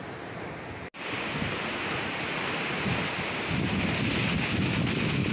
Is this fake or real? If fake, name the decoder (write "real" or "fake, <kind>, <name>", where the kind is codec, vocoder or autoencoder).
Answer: real